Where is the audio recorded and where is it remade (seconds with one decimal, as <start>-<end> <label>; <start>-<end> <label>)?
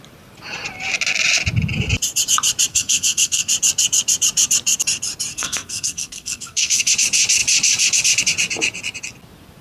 0.0-2.7 recorded; 2.7-3.5 remade; 3.5-5.3 recorded; 5.3-6.9 remade; 6.9-9.6 recorded